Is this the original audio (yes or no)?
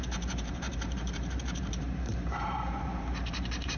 no